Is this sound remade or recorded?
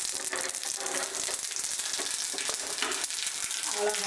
recorded